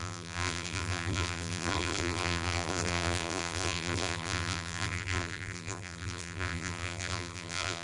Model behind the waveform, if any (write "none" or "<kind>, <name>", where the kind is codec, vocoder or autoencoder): vocoder, BigVGAN v2